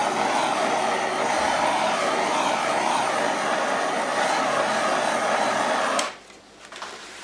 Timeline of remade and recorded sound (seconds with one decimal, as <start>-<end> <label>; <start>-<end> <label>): 0.0-7.2 recorded